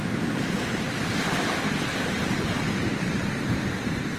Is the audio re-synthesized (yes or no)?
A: no